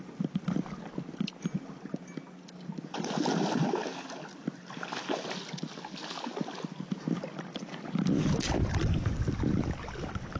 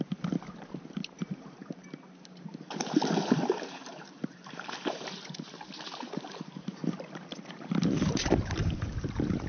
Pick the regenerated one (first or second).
second